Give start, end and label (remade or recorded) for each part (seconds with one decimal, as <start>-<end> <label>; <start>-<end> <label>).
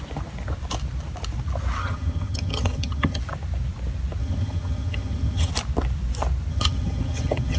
0.0-1.8 recorded; 1.8-3.2 remade; 3.2-4.2 recorded; 4.2-5.5 remade; 5.5-6.5 recorded; 6.5-7.6 remade